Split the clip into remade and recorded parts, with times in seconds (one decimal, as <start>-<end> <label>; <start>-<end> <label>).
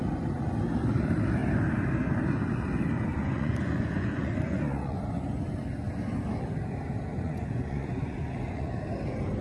0.0-3.1 recorded; 3.1-5.0 remade; 5.0-7.1 recorded; 7.1-8.8 remade; 8.8-9.4 recorded